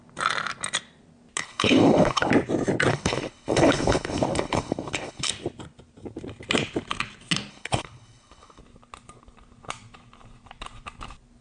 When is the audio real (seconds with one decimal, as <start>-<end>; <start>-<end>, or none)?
0.0-1.4; 2.3-2.9; 5.3-7.5; 8.6-11.4